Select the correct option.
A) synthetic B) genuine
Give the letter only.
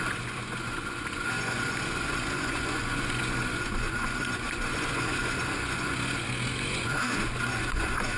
A